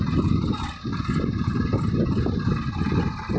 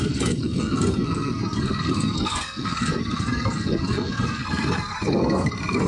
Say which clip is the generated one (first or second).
second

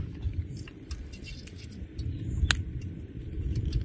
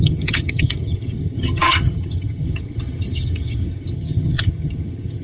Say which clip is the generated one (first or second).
second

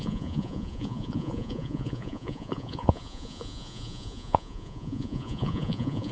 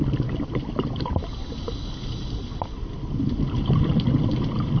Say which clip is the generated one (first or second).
first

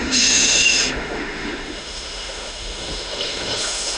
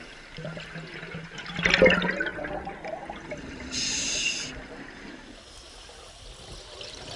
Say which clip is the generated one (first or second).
first